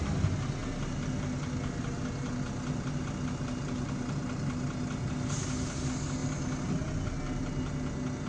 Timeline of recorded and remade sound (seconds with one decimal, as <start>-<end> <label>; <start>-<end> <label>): 0.0-8.3 recorded